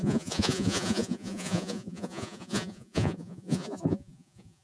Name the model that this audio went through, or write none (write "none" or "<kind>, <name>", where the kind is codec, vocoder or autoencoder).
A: vocoder, Vocos